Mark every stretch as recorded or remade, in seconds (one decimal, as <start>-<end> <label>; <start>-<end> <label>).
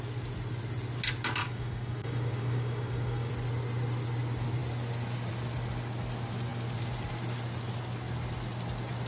0.0-1.4 recorded; 1.4-3.3 remade; 3.3-9.1 recorded